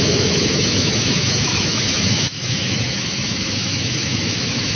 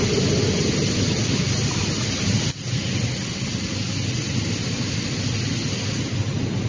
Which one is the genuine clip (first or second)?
second